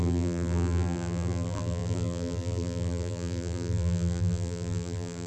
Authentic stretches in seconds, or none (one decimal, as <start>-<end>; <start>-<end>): none